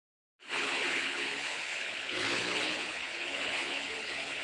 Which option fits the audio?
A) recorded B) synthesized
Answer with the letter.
B